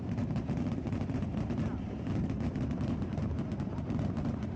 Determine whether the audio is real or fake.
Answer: fake